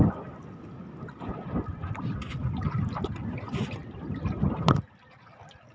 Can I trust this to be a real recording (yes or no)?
no